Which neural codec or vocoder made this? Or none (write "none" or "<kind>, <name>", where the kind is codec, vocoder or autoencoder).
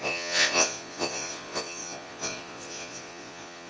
vocoder, Vocos